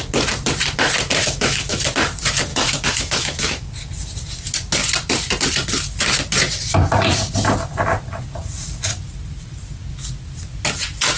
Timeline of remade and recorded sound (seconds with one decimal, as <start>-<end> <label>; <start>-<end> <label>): 0.0-1.2 recorded; 1.2-1.8 remade; 1.8-2.5 recorded; 2.5-3.7 remade; 3.7-11.2 recorded